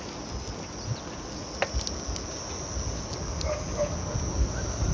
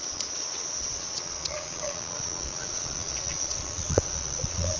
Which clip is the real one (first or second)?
first